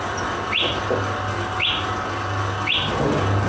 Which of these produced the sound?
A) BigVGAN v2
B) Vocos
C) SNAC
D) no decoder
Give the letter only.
D